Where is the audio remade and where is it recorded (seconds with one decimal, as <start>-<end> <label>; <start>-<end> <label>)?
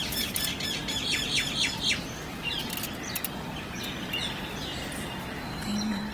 0.0-6.1 recorded